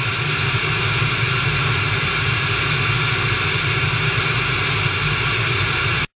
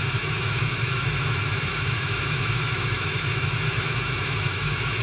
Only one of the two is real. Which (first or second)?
first